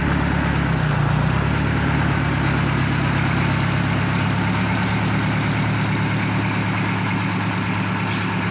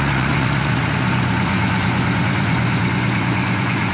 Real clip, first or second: first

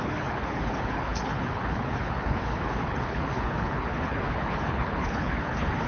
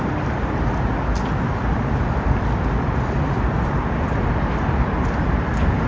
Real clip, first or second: second